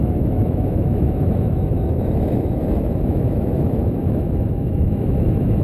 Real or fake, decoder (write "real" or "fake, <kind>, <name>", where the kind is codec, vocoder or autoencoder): fake, autoencoder, DAC-VAE